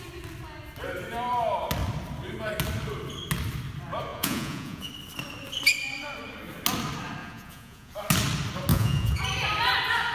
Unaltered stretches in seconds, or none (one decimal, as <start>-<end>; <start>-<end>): 0.0-4.1; 4.9-7.2; 7.9-8.7; 9.2-10.1